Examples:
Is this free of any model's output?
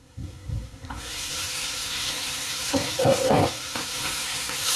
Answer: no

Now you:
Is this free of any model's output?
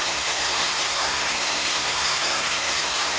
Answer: no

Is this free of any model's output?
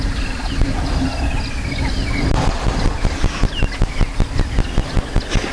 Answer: yes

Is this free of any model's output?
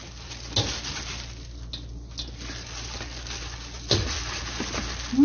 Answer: yes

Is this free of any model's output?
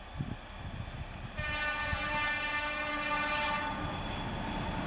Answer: yes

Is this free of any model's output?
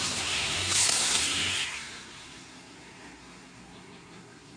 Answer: no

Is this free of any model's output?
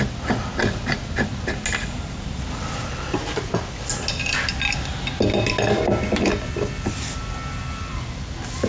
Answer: yes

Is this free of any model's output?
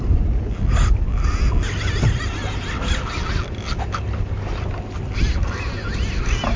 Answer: yes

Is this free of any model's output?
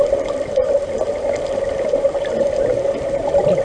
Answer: yes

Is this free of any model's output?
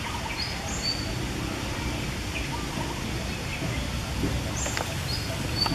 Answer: yes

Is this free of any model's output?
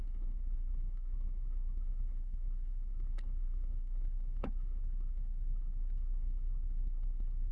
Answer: no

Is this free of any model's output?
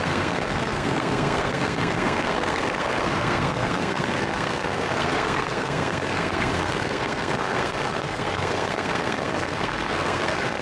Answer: no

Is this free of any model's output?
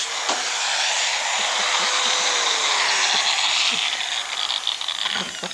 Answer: yes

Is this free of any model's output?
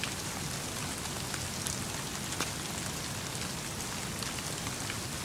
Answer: yes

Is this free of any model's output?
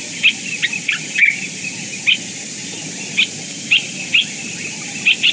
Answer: yes